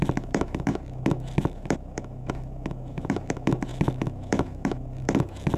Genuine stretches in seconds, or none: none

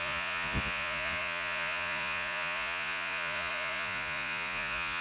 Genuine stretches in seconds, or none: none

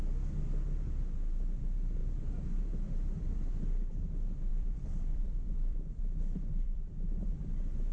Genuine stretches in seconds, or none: 0.0-4.5; 7.3-7.9